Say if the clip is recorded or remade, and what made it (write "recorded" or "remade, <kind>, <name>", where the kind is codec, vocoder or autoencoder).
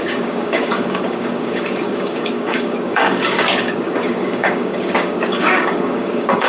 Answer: remade, codec, DAC